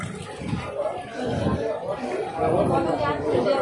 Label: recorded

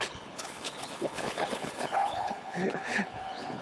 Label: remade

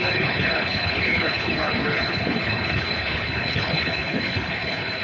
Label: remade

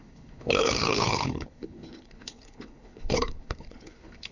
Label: remade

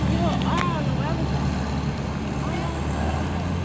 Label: recorded